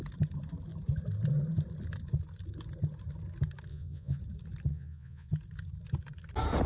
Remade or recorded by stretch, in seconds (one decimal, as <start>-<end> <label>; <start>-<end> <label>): 0.0-3.7 recorded; 3.7-4.2 remade; 4.2-4.7 recorded; 4.7-5.3 remade; 5.3-6.7 recorded